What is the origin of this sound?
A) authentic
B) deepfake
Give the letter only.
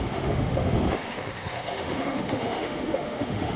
B